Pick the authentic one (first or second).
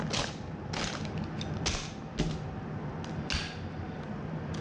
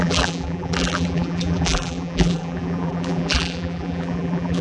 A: first